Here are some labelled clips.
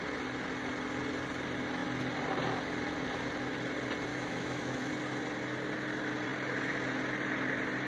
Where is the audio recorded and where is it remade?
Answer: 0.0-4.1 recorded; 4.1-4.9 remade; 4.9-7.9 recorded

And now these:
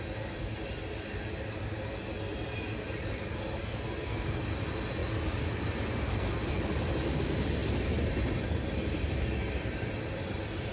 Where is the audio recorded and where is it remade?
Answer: 0.0-3.6 recorded; 3.6-4.4 remade; 4.4-6.1 recorded; 6.1-6.6 remade; 6.6-10.7 recorded

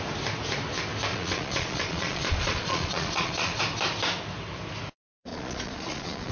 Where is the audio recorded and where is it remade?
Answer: 0.0-1.1 recorded; 1.1-3.6 remade; 3.6-5.3 recorded; 5.3-6.3 remade